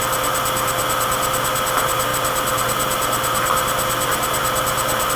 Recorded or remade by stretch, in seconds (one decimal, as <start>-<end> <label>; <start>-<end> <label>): 0.0-5.2 recorded